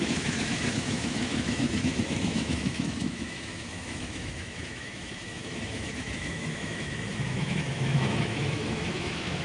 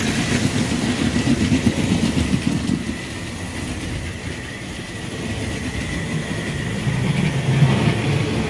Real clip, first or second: second